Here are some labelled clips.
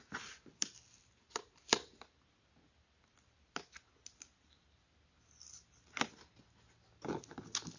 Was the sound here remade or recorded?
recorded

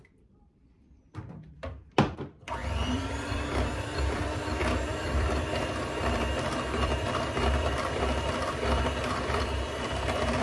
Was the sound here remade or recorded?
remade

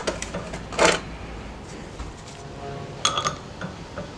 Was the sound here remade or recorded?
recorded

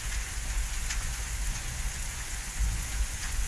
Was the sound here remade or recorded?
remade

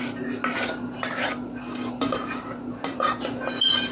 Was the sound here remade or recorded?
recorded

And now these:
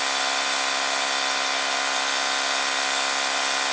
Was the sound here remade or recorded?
recorded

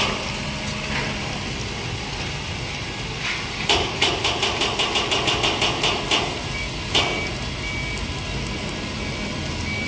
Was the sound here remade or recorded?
recorded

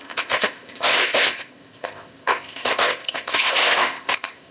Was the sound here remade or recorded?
remade